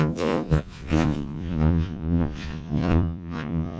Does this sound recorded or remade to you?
remade